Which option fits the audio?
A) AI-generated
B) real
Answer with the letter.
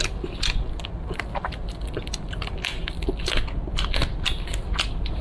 B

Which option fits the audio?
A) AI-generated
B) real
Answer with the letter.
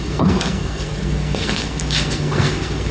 A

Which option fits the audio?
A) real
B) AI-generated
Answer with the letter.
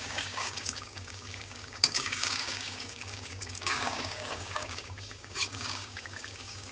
B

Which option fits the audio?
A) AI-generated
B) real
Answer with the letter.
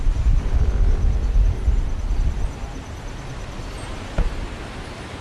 B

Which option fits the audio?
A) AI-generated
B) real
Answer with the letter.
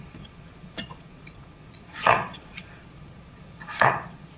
A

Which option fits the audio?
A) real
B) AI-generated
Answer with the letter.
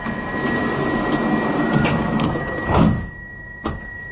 A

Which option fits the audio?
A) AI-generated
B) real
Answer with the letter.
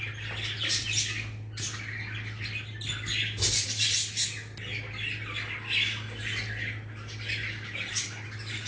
B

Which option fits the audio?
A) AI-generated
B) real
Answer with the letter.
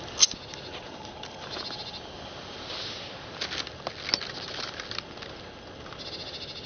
B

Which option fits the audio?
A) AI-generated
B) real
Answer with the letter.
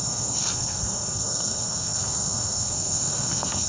A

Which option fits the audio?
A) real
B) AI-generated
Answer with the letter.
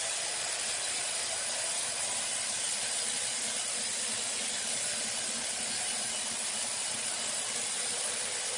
A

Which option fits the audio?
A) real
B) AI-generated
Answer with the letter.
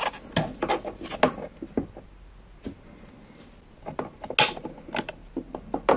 A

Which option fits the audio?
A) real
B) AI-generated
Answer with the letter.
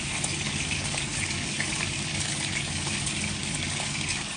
B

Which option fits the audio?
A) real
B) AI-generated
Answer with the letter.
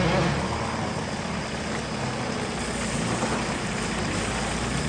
A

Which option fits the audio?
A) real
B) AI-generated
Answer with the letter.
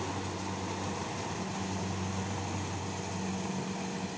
A